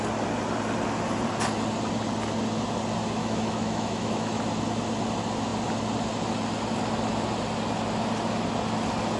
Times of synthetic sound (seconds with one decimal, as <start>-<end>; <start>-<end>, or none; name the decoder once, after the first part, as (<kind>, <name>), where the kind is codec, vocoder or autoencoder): 3.2-4.4 (autoencoder, DAC-VAE)